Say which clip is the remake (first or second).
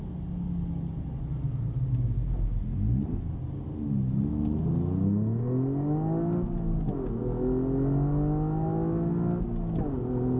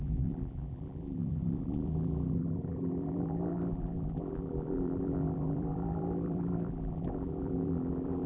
second